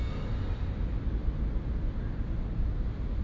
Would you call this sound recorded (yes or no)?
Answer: yes